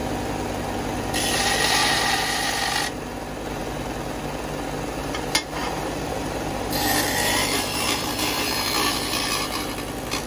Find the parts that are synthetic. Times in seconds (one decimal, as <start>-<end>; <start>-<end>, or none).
5.0-9.7